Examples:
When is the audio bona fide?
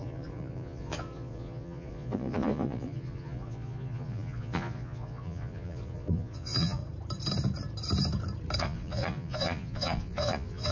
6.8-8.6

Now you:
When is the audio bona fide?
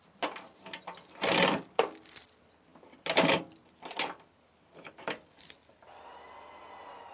0.0-7.1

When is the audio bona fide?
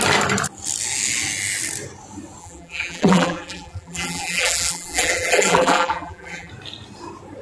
0.0-2.4; 6.5-7.4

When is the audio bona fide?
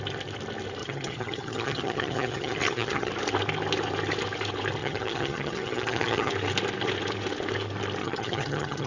0.0-0.8; 3.1-4.8; 6.3-8.0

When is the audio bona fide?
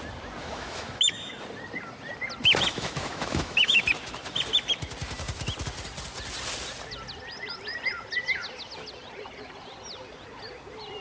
0.0-0.4; 1.3-2.7; 3.8-11.0